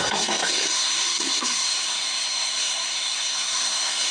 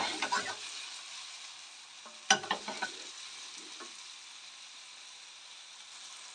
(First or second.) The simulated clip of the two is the first